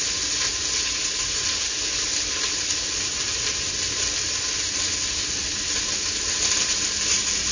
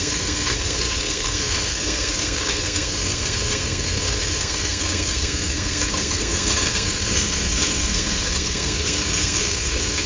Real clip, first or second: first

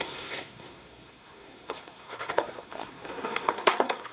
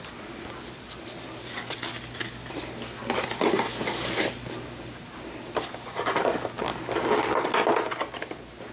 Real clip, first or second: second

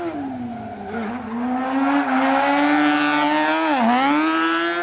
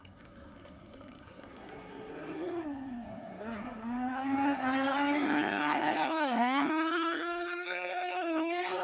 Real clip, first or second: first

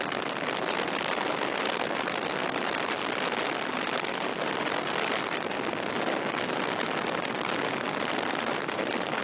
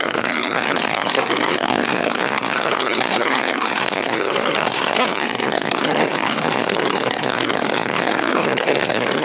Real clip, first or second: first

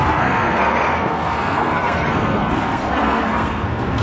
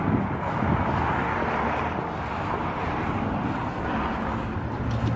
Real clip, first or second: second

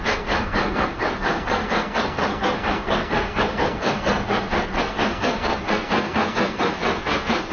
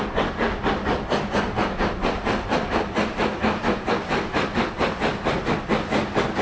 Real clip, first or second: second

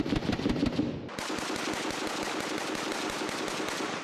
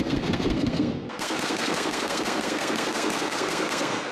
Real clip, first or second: first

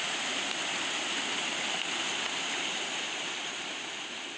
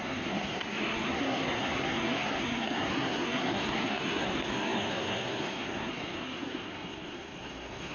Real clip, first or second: first